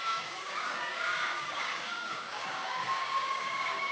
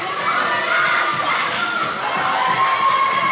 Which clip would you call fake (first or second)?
first